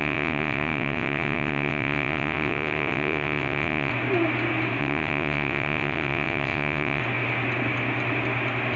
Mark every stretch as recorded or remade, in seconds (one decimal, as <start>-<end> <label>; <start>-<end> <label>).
0.0-3.9 remade; 3.9-4.8 recorded; 4.8-7.0 remade; 7.0-8.8 recorded